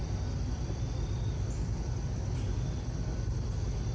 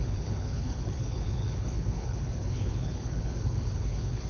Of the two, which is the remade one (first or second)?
second